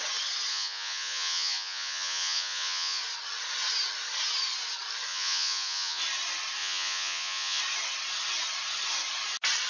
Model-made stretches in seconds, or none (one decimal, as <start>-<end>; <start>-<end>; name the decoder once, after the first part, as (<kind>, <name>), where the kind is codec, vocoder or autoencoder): 0.5-3.0 (vocoder, Vocos); 5.1-6.0; 6.6-7.6